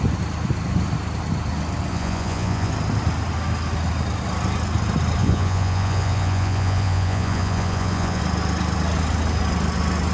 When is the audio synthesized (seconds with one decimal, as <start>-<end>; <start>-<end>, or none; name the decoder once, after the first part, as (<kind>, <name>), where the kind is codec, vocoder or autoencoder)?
1.9-2.7 (vocoder, Vocos); 5.2-8.2